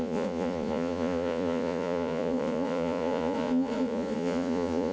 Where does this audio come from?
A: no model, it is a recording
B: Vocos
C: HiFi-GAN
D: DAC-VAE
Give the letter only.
B